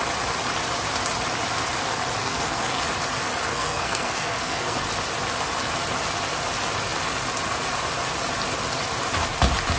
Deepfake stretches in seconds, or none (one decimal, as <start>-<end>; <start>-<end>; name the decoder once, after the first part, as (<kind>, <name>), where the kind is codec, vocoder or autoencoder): 2.2-2.8 (codec, SNAC); 3.5-4.8